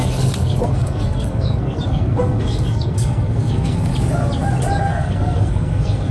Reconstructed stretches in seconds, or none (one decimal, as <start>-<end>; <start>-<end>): 0.0-3.9; 4.8-6.1